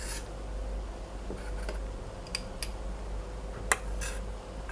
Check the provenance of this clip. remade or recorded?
recorded